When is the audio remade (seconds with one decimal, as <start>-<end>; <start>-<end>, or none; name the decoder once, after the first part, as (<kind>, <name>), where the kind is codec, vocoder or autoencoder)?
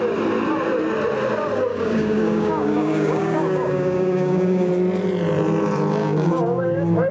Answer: 1.7-4.7 (codec, DAC); 6.0-7.1